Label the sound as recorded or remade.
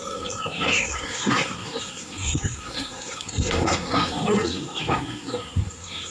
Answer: remade